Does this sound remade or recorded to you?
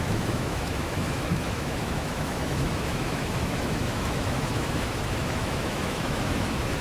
remade